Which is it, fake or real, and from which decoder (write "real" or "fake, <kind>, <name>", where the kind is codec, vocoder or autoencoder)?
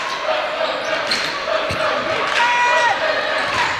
real